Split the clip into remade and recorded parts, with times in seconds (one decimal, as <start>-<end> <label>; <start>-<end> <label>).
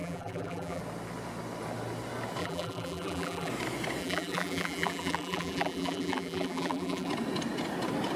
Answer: 0.0-0.8 remade; 0.8-2.4 recorded; 2.4-3.5 remade; 3.5-4.0 recorded; 4.0-7.1 remade; 7.1-8.2 recorded